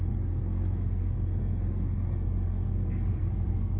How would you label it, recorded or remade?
remade